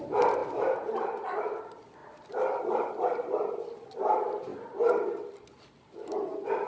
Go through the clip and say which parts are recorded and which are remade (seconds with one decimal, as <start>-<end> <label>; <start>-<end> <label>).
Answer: 0.0-6.7 recorded